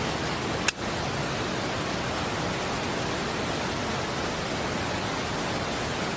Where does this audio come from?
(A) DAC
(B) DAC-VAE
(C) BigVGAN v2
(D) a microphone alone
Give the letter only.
D